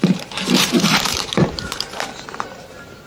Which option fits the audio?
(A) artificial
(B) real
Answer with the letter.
A